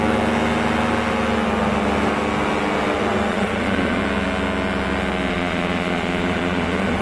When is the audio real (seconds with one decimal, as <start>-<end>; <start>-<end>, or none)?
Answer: 0.0-3.3; 4.0-5.3